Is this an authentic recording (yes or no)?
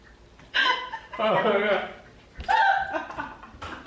yes